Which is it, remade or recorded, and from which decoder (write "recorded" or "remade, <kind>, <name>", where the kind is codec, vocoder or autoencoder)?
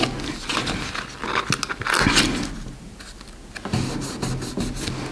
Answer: recorded